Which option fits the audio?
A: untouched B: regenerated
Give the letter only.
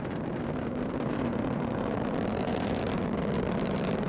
B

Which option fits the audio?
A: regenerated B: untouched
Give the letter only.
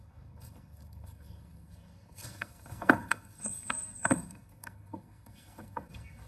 A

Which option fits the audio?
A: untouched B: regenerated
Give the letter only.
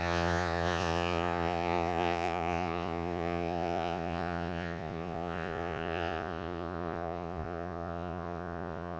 B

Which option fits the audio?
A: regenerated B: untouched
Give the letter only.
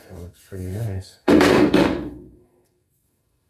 A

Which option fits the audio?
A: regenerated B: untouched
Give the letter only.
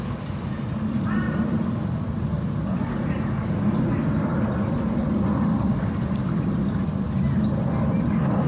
B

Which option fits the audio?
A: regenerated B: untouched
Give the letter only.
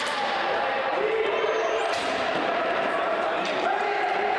A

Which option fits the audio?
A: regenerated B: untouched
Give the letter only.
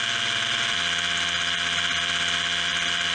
B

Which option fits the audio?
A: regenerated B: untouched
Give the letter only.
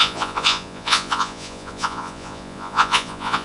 A